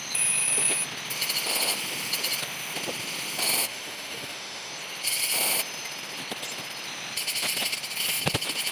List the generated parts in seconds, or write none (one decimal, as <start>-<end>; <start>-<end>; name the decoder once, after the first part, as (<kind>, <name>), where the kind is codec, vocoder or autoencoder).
3.6-4.7 (autoencoder, DAC-VAE)